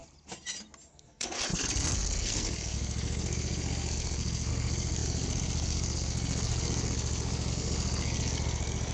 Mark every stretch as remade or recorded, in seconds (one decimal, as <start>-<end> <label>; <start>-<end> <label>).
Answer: 0.0-0.9 recorded; 0.9-8.9 remade